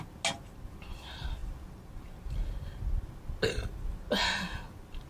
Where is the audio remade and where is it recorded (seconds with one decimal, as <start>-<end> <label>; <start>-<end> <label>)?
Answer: 0.0-5.1 recorded